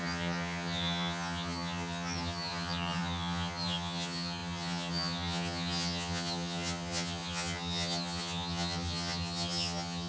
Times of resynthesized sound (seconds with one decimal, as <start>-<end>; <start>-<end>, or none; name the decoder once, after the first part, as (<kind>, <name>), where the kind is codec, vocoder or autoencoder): 0.0-10.1 (vocoder, HiFi-GAN)